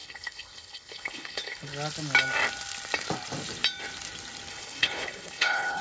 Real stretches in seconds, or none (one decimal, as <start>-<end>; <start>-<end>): 1.7-4.5